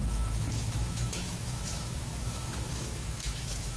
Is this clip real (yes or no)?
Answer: no